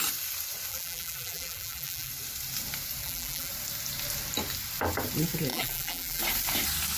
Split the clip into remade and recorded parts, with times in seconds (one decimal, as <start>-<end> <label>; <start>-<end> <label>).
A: 0.0-0.7 recorded; 0.7-2.1 remade; 2.1-3.0 recorded; 3.0-3.5 remade; 3.5-5.5 recorded; 5.5-6.2 remade; 6.2-7.0 recorded